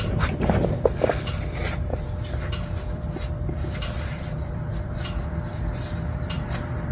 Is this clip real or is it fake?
fake